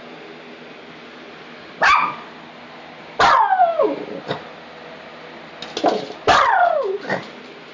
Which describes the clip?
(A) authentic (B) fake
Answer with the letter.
A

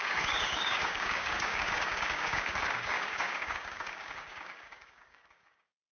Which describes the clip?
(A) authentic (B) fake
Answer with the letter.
B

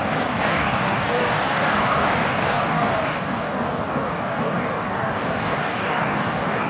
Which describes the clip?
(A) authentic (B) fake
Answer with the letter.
B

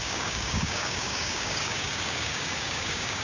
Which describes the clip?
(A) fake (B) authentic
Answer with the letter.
A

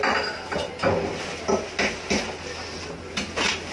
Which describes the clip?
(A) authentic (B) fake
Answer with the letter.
A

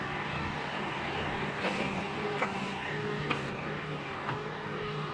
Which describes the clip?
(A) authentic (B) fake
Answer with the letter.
B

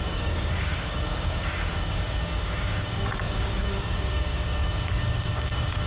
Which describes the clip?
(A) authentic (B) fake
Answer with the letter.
B